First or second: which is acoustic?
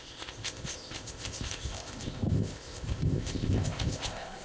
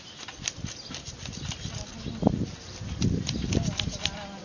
second